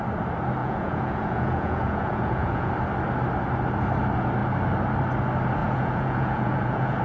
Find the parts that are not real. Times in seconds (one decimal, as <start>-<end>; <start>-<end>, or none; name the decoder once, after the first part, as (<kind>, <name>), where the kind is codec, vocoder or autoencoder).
0.6-2.7 (vocoder, Vocos); 5.6-7.0